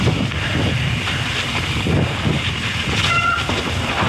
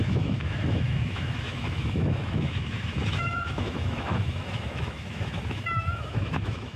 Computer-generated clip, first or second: second